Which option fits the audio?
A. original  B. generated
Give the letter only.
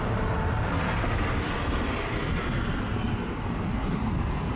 A